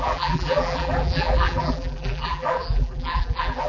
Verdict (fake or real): fake